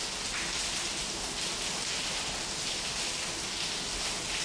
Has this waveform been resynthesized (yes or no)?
no